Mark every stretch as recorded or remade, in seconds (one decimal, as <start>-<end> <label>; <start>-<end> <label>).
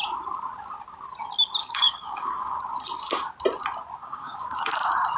0.0-1.6 recorded; 1.6-2.6 remade; 2.6-4.0 recorded; 4.0-4.7 remade; 4.7-5.2 recorded